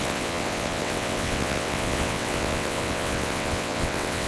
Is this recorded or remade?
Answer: remade